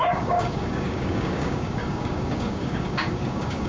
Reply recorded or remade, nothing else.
remade